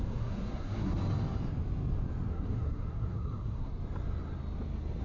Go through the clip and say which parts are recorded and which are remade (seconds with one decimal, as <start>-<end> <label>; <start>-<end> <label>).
0.0-1.0 remade; 1.0-2.3 recorded; 2.3-3.7 remade; 3.7-5.0 recorded

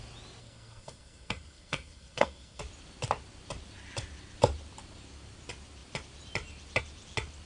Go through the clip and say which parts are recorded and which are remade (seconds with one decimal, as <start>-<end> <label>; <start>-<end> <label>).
0.0-0.4 recorded; 0.4-2.6 remade; 2.6-7.5 recorded

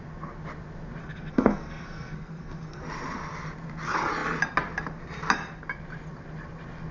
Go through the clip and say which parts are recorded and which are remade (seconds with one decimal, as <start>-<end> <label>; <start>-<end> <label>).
0.0-1.0 recorded; 1.0-2.8 remade; 2.8-6.9 recorded

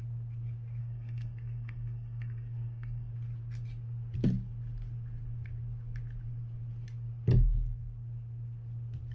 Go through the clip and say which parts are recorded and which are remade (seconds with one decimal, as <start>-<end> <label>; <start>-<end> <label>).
0.0-0.8 recorded; 0.8-3.1 remade; 3.1-9.1 recorded

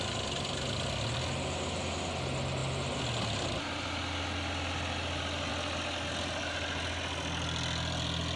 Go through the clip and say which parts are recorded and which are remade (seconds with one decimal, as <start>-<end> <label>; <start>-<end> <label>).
0.0-8.4 recorded

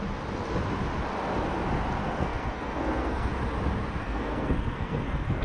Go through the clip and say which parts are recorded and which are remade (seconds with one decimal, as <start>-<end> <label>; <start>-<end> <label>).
0.0-2.0 recorded; 2.0-3.3 remade; 3.3-4.0 recorded; 4.0-5.4 remade

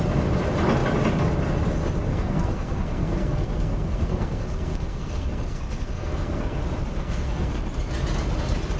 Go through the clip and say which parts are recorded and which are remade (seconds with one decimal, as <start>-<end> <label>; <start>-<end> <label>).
0.0-2.1 recorded; 2.1-6.6 remade; 6.6-7.0 recorded; 7.0-7.6 remade; 7.6-8.8 recorded

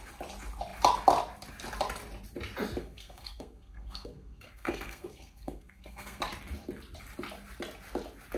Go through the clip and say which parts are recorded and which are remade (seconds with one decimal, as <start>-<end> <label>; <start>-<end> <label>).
0.0-2.8 recorded; 2.8-6.2 remade; 6.2-8.4 recorded